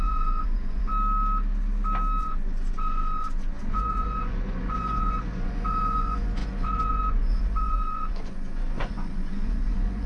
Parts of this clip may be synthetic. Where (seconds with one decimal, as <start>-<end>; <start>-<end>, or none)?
0.0-0.9; 2.2-10.1